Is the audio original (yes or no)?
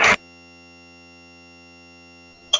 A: no